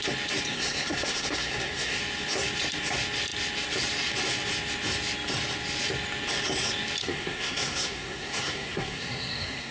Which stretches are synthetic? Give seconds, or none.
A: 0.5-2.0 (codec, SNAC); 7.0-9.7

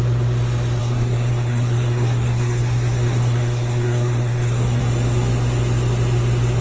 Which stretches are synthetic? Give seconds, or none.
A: 0.8-4.8 (codec, SNAC)